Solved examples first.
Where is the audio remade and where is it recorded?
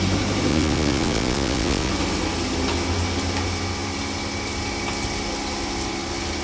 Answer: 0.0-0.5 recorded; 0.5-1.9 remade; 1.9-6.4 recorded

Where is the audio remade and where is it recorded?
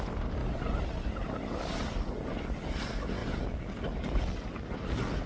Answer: 0.0-5.3 recorded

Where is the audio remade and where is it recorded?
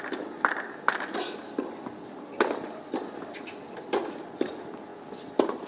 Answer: 0.0-5.7 recorded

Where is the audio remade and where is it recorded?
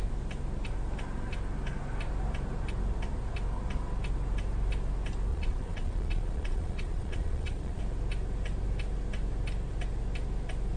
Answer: 0.0-5.3 recorded; 5.3-7.8 remade; 7.8-10.8 recorded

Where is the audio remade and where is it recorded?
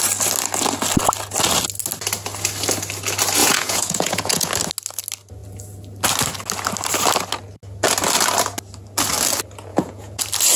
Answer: 0.0-3.4 recorded; 3.4-4.5 remade; 4.5-9.7 recorded; 9.7-10.2 remade; 10.2-10.6 recorded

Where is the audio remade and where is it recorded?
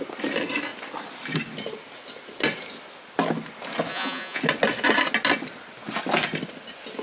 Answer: 0.0-3.9 recorded; 3.9-4.4 remade; 4.4-7.0 recorded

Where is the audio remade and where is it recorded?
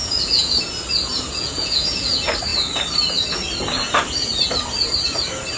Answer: 0.0-0.6 remade; 0.6-1.1 recorded; 1.1-2.1 remade; 2.1-5.6 recorded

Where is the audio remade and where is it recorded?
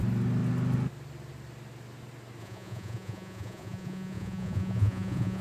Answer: 0.0-2.4 recorded; 2.4-5.4 remade